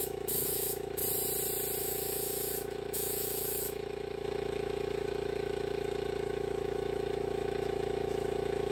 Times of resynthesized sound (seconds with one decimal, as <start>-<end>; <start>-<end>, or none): 0.0-1.0; 1.8-8.7